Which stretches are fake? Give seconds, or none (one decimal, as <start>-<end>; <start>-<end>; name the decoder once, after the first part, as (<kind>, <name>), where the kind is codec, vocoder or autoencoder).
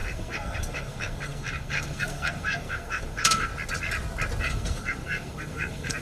0.0-3.5 (codec, SNAC); 4.4-6.0